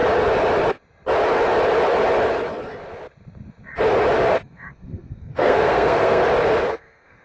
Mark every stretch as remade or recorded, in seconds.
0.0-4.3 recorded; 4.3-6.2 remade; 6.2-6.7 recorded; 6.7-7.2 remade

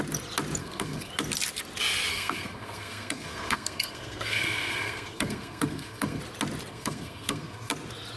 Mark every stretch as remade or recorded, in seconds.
0.0-0.6 recorded; 0.6-1.1 remade; 1.1-2.1 recorded; 2.1-6.2 remade; 6.2-6.7 recorded; 6.7-7.7 remade; 7.7-8.2 recorded

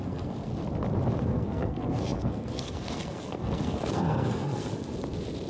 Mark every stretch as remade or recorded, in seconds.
0.0-0.5 remade; 0.5-1.2 recorded; 1.2-4.7 remade; 4.7-5.5 recorded

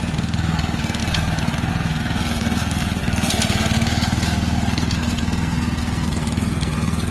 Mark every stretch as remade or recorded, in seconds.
0.0-7.1 remade

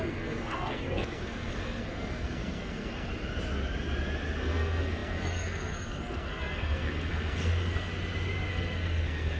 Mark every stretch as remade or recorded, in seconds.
0.0-3.1 remade; 3.1-4.4 recorded; 4.4-7.9 remade; 7.9-8.5 recorded; 8.5-9.4 remade

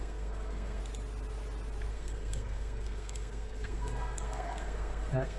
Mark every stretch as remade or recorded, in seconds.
0.0-0.8 remade; 0.8-1.9 recorded; 1.9-5.4 remade